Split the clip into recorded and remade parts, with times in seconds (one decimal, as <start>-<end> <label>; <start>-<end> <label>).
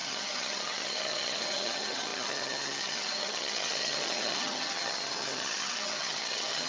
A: 0.0-6.7 remade